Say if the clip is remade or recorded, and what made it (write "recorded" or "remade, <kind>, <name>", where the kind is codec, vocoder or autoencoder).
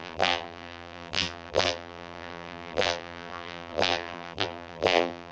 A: remade, vocoder, BigVGAN v2